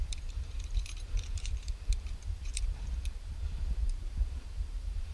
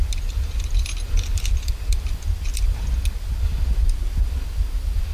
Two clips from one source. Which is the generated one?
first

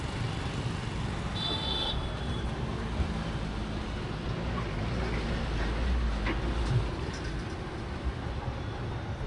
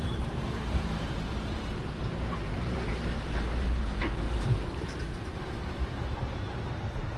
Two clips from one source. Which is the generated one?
second